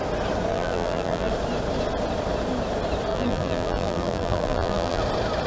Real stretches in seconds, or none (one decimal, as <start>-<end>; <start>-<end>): 0.0-0.5; 1.3-3.1; 5.0-5.5